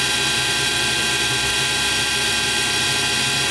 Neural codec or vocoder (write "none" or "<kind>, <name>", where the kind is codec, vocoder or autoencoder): none